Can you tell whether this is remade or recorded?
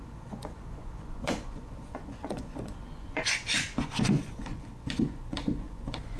remade